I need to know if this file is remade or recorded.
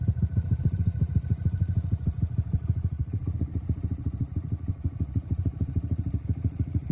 remade